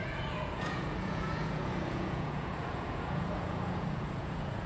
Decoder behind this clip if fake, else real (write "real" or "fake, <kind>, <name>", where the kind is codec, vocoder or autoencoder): fake, vocoder, Vocos